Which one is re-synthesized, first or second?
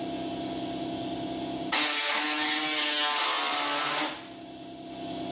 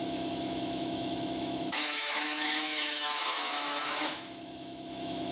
second